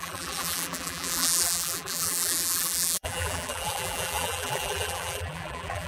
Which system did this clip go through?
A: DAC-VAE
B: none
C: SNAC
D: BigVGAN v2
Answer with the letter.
D